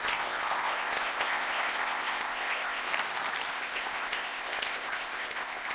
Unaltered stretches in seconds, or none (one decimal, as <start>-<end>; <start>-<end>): 2.9-3.5